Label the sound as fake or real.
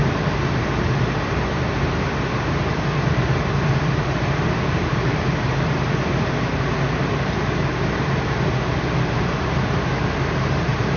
fake